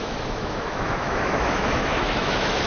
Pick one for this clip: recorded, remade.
remade